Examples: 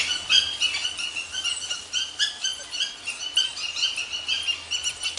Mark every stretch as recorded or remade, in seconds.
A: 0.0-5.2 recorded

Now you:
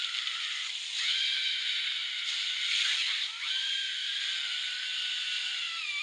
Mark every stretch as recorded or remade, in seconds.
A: 0.0-6.0 recorded

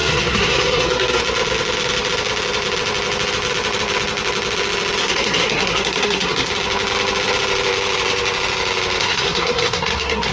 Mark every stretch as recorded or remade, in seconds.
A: 0.0-1.2 remade; 1.2-5.0 recorded; 5.0-6.5 remade; 6.5-9.0 recorded; 9.0-10.3 remade

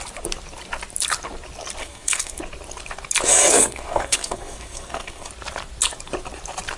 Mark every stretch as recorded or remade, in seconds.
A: 0.0-1.8 recorded; 1.8-2.4 remade; 2.4-3.3 recorded; 3.3-5.3 remade; 5.3-6.8 recorded

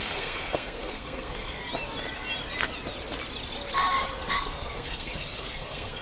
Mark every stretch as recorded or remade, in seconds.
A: 0.0-1.6 remade; 1.6-4.3 recorded; 4.3-6.0 remade

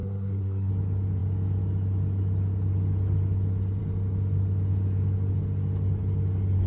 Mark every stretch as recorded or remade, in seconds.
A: 0.0-0.7 remade; 0.7-6.7 recorded

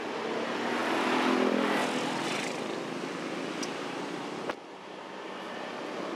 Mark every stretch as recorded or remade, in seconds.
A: 0.0-6.2 recorded

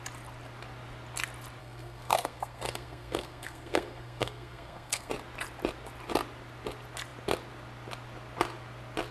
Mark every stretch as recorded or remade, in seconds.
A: 0.0-1.6 recorded; 1.6-5.1 remade; 5.1-9.1 recorded